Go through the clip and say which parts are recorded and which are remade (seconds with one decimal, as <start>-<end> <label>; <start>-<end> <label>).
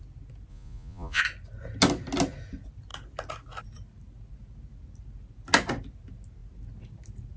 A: 0.0-0.5 recorded; 0.5-1.2 remade; 1.2-7.4 recorded